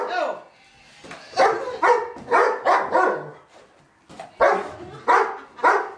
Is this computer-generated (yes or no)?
no